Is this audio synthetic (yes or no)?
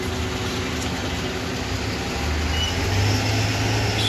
no